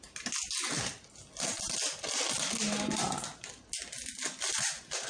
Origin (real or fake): real